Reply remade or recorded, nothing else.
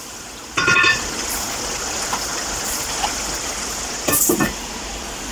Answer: recorded